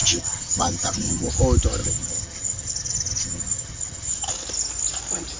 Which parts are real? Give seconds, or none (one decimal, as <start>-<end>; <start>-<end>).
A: 1.3-1.8; 4.3-5.4